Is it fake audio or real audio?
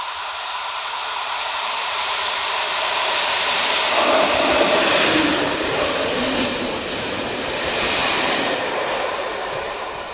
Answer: fake